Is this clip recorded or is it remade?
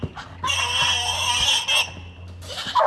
recorded